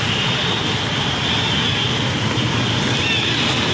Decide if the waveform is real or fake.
real